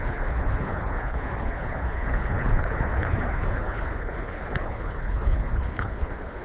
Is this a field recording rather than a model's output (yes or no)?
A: no